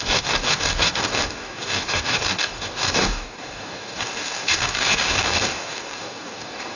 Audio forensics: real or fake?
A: fake